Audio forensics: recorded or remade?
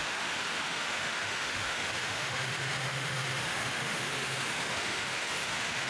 remade